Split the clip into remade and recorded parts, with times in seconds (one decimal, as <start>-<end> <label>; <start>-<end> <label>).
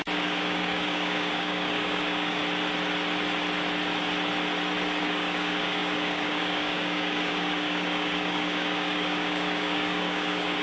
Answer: 0.0-2.4 remade; 2.4-5.0 recorded; 5.0-10.6 remade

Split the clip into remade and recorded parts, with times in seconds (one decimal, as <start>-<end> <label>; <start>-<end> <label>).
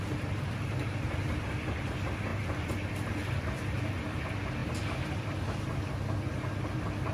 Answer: 0.0-7.1 recorded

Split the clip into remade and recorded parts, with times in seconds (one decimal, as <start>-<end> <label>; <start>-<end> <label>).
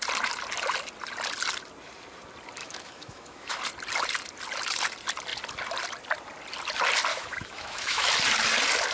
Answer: 0.0-2.6 recorded; 2.6-3.6 remade; 3.6-7.1 recorded; 7.1-8.1 remade; 8.1-8.9 recorded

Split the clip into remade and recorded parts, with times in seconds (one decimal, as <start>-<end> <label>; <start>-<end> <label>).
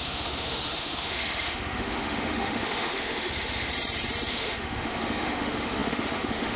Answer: 0.0-3.7 remade; 3.7-4.3 recorded; 4.3-6.6 remade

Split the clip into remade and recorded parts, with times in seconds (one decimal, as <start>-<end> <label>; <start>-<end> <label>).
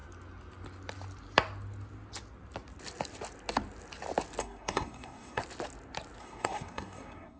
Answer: 0.0-4.4 recorded; 4.4-5.4 remade; 5.4-6.2 recorded; 6.2-7.4 remade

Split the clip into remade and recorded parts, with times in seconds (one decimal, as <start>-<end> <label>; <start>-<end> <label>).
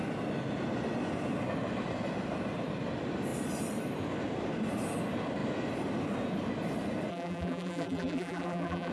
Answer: 0.0-7.1 recorded; 7.1-8.9 remade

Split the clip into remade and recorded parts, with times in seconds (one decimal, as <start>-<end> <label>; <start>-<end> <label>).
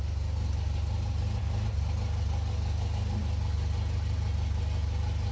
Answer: 0.0-5.3 recorded